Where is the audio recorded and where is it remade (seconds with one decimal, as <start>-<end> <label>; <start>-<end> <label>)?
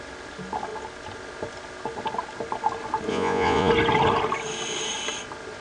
0.0-3.1 recorded; 3.1-3.7 remade; 3.7-5.6 recorded